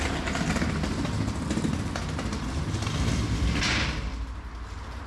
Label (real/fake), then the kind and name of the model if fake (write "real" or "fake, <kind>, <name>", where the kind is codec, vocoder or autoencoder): real